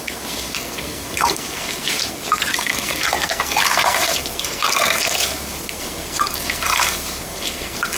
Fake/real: fake